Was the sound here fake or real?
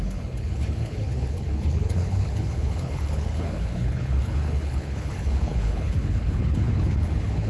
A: fake